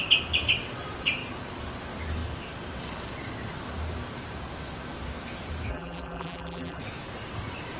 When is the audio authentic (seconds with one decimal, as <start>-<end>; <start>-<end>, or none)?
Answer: 0.0-5.7; 6.8-7.8